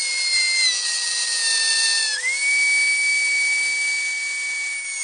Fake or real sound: real